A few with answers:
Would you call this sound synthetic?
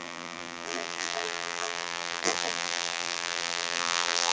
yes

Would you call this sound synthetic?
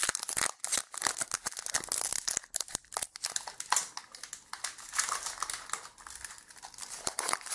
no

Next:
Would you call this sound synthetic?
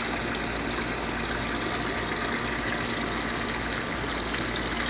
no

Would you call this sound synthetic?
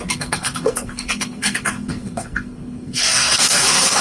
yes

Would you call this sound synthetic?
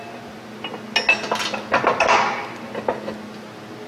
no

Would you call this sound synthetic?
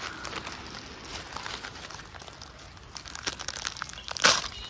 no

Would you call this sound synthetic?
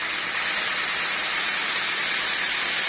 no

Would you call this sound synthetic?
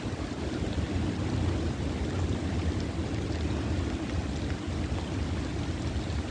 no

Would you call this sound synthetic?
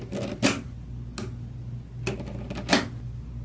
no